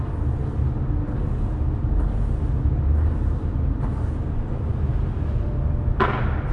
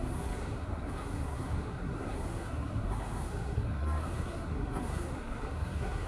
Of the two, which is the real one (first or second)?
first